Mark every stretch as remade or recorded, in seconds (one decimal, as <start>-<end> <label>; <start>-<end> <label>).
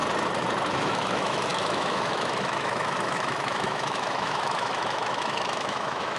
0.0-0.7 recorded; 0.7-6.2 remade